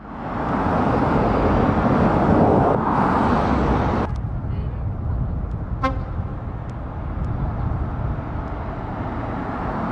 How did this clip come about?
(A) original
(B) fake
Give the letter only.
A